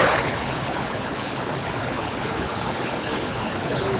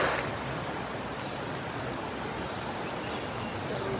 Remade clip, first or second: first